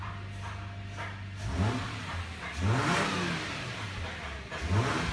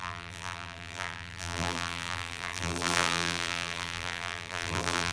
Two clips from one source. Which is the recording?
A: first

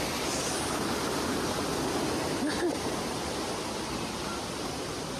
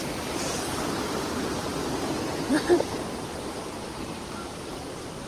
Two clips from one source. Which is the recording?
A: first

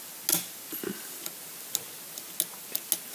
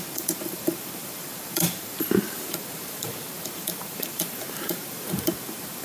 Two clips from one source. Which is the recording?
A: first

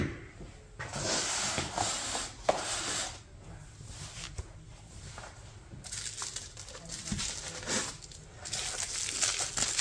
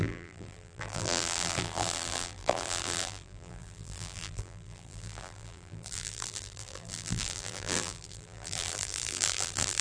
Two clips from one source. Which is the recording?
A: first